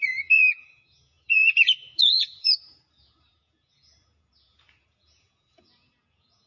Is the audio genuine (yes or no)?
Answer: no